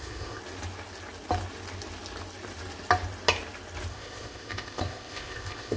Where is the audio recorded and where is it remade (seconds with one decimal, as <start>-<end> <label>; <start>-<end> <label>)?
0.0-0.4 remade; 0.4-3.9 recorded; 3.9-5.8 remade